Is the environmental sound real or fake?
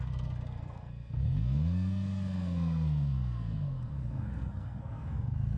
fake